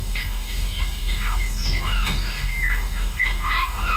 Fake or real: fake